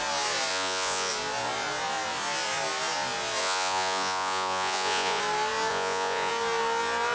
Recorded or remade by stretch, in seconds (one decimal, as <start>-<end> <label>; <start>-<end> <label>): 0.0-0.5 recorded; 0.5-1.1 remade; 1.1-3.4 recorded; 3.4-5.2 remade; 5.2-5.7 recorded; 5.7-6.3 remade; 6.3-7.1 recorded